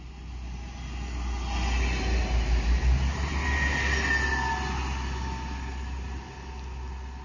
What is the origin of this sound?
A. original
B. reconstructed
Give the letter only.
A